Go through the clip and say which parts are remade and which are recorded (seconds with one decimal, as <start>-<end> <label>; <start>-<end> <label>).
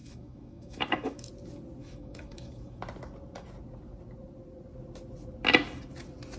0.0-1.3 remade; 1.3-1.8 recorded; 1.8-2.8 remade; 2.8-6.4 recorded